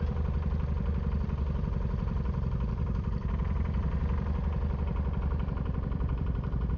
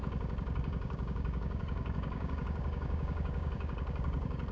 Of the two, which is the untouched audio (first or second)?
first